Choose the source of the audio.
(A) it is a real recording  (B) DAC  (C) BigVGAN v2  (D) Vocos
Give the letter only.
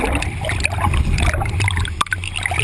A